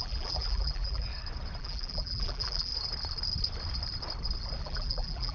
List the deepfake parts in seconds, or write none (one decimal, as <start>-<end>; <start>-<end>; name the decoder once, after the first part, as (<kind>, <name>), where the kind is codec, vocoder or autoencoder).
0.0-1.1 (vocoder, BigVGAN v2); 1.6-2.7; 4.6-5.3